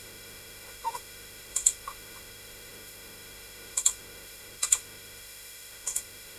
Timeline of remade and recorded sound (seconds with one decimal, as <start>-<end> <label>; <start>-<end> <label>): 0.0-6.4 remade